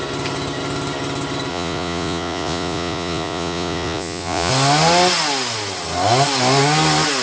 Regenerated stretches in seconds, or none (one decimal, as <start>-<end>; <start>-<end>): 1.5-4.5